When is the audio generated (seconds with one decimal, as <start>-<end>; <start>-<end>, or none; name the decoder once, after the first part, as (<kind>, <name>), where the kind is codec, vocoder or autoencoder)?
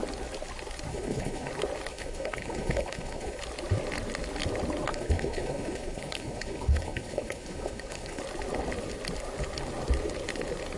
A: 0.9-1.5 (codec, HILCodec); 1.9-3.4; 4.9-8.2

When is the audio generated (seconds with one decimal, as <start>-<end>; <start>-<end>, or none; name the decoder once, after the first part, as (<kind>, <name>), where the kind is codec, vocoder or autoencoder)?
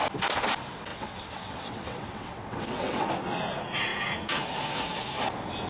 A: 0.9-3.1 (vocoder, WaveNeXt)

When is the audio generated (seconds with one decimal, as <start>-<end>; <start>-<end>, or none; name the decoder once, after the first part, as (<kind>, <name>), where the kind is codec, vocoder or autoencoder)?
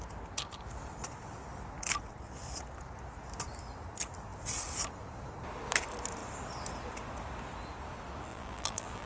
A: 8.3-9.1 (vocoder, BigVGAN v2)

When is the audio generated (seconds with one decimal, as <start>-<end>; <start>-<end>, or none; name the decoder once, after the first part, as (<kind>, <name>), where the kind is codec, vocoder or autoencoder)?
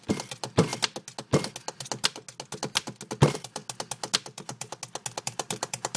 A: 0.0-0.7 (vocoder, BigVGAN v2); 3.2-3.6; 5.2-6.0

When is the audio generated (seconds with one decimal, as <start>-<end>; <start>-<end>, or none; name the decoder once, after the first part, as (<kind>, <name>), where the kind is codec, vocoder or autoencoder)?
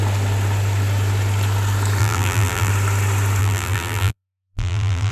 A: 2.0-2.7 (vocoder, BigVGAN v2); 3.4-5.1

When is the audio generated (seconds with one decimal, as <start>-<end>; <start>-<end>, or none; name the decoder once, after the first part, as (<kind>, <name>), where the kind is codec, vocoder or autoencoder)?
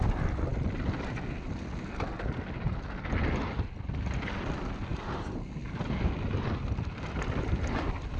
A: none